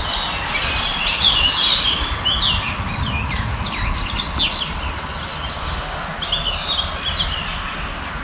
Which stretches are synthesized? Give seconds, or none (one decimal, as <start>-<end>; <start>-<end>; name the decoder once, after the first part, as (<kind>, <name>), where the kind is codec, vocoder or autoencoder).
5.6-6.1 (autoencoder, DAC-VAE)